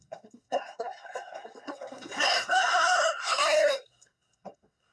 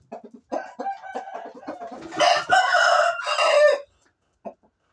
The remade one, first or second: first